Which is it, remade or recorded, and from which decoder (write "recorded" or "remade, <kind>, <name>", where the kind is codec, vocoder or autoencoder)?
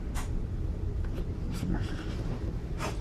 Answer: recorded